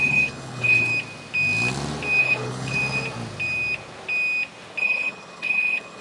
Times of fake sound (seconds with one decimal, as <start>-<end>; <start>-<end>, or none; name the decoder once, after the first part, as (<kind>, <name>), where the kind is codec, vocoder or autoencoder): 0.0-0.9 (codec, HILCodec); 2.2-2.8; 4.8-6.0

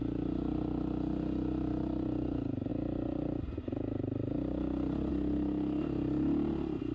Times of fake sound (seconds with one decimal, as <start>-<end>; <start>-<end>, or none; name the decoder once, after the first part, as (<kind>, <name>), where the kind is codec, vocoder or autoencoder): none

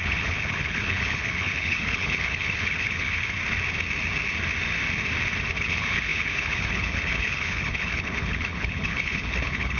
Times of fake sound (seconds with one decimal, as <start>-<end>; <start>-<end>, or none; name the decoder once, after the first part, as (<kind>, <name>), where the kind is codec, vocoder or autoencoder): 0.0-3.4 (codec, HILCodec); 5.6-9.8

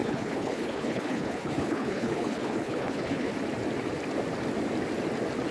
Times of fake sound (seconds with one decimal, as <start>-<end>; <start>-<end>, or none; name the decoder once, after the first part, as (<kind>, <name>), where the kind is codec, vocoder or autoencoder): 0.0-3.3 (codec, HILCodec)

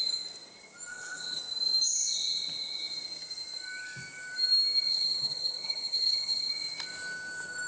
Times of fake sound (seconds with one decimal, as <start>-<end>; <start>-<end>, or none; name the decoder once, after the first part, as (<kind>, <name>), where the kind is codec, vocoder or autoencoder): 0.9-1.4 (codec, HILCodec); 4.9-6.5